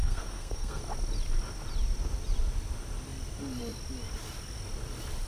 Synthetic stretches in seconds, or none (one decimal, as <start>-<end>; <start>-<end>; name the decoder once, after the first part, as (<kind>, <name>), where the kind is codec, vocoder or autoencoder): 0.0-0.8 (codec, SNAC)